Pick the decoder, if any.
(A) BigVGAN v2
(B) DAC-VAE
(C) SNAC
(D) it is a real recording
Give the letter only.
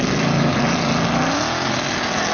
D